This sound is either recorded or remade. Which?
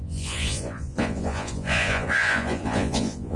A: remade